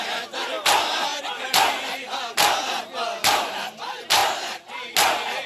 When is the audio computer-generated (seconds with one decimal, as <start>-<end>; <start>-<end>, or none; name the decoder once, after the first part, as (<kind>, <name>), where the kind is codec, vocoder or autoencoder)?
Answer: none